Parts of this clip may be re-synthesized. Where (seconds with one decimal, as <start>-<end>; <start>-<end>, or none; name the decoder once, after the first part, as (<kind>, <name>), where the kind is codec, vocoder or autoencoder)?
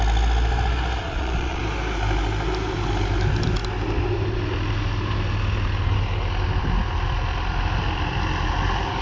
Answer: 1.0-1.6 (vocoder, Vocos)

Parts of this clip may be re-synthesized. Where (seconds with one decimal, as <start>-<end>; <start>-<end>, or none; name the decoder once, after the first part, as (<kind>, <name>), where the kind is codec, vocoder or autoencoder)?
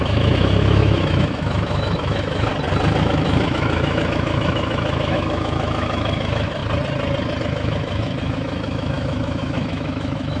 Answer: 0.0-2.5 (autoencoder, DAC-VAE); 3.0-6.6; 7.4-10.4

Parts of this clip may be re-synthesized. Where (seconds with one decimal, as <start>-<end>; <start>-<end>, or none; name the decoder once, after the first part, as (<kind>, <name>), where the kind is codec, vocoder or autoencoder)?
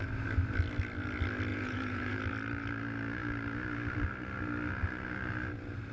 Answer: 1.5-2.2 (vocoder, Vocos)